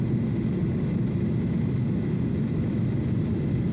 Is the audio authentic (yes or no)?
yes